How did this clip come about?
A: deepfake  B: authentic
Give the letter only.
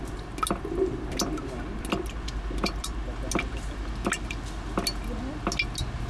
B